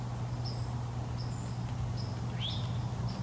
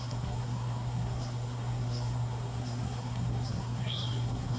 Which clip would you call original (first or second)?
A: first